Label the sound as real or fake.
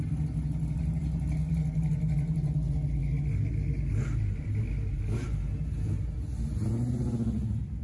real